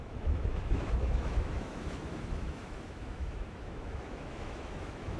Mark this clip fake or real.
fake